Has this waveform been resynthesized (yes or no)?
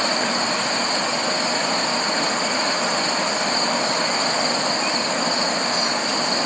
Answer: no